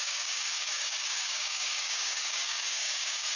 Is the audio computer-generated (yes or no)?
yes